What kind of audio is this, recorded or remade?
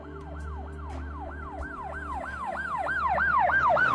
recorded